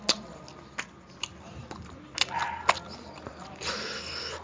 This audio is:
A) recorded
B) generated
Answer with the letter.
A